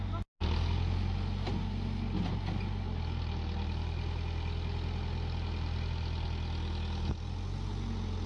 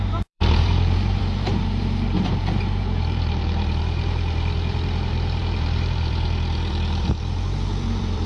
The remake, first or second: second